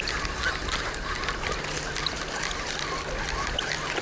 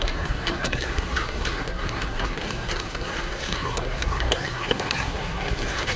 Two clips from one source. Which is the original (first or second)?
first